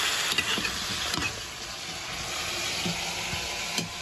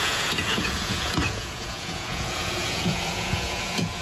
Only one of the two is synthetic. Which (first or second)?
second